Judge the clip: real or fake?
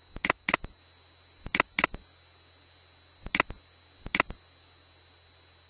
real